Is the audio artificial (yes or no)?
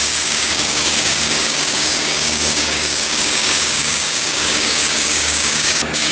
yes